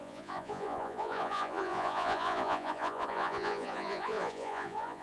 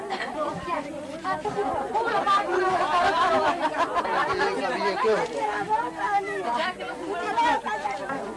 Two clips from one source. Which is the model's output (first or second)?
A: first